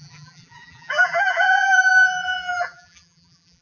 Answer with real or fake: fake